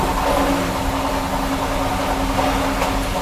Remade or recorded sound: recorded